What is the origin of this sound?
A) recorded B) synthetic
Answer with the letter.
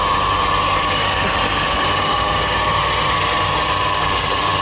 A